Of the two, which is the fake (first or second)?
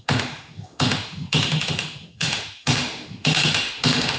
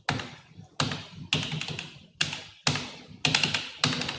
first